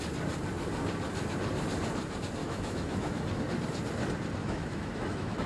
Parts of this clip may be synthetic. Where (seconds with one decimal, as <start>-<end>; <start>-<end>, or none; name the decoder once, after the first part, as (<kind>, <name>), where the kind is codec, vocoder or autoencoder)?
2.4-3.4 (autoencoder, DAC-VAE); 4.4-5.5